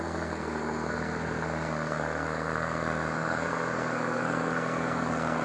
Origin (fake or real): fake